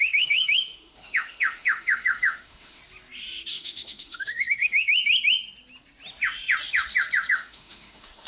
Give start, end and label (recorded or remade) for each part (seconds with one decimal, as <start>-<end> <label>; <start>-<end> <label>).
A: 0.0-2.8 remade; 2.8-3.5 recorded; 3.5-5.0 remade; 5.0-7.3 recorded; 7.3-8.3 remade